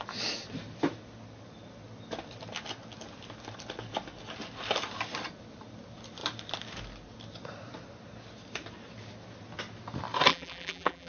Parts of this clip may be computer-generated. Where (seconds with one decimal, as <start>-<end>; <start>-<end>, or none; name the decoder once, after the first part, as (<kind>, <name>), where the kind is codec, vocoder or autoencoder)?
10.3-11.1 (vocoder, BigVGAN v2)